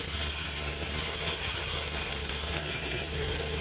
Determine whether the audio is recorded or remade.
remade